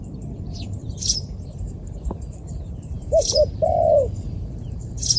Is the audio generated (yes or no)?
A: yes